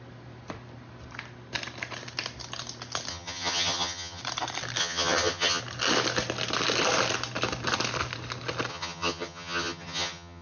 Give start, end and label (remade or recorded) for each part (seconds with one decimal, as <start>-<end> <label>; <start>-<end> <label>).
0.0-3.1 recorded; 3.1-4.2 remade; 4.2-4.8 recorded; 4.8-5.6 remade; 5.6-8.7 recorded; 8.7-10.4 remade